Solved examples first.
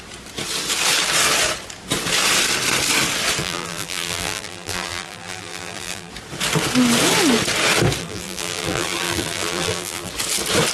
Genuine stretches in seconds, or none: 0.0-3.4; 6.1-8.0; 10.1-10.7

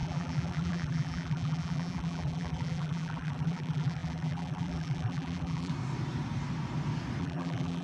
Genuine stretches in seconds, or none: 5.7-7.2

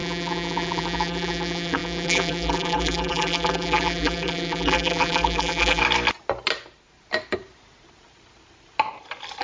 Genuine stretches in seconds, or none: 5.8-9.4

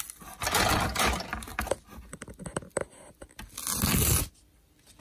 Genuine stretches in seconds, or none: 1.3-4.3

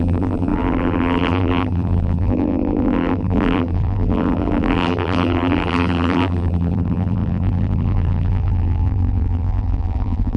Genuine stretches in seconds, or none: none

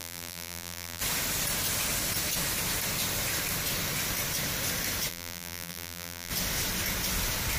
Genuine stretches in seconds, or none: 1.0-5.1; 6.3-7.6

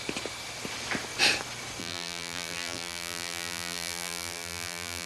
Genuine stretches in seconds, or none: 0.0-1.8